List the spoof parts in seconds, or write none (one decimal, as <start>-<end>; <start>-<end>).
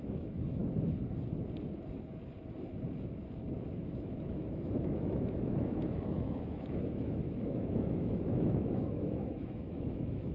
0.0-0.6; 3.8-10.3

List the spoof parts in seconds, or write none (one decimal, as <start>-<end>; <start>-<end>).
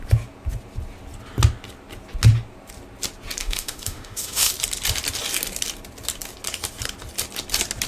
3.4-4.5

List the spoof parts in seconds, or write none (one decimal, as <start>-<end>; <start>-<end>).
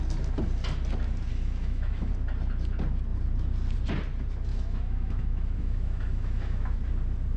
1.3-2.1; 4.5-6.8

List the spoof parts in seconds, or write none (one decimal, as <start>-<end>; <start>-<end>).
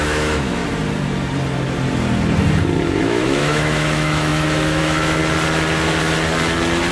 0.0-0.6; 3.0-5.2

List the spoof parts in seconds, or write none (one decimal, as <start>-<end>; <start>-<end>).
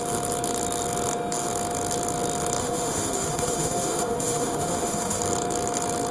2.6-5.2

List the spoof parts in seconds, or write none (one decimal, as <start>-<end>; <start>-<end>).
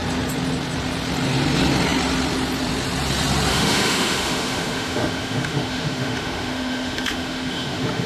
3.5-8.1